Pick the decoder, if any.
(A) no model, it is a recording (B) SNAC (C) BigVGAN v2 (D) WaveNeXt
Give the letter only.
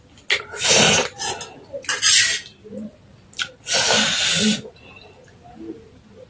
A